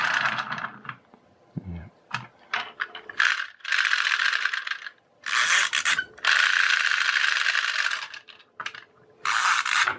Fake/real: real